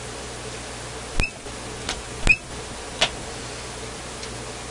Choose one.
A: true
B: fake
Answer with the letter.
A